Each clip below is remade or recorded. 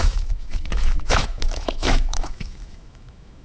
remade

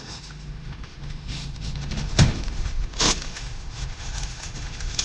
remade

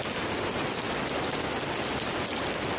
recorded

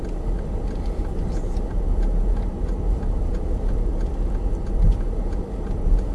recorded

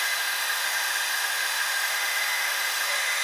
remade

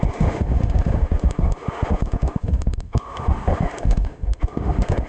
remade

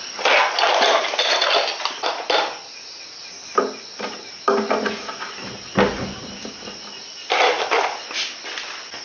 recorded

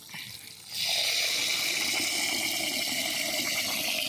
recorded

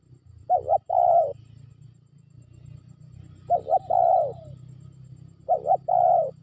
recorded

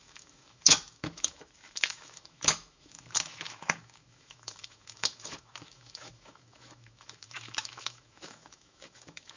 remade